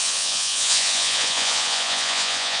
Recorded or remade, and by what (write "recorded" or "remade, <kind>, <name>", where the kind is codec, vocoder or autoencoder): remade, vocoder, Vocos